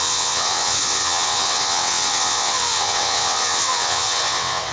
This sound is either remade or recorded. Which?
remade